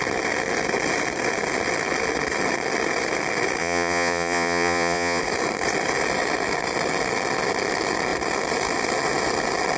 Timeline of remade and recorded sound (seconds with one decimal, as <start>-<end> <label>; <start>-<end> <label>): 0.0-3.6 recorded; 3.6-5.2 remade; 5.2-9.8 recorded